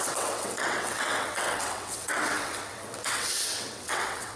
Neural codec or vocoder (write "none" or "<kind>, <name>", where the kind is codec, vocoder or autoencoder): vocoder, WaveNeXt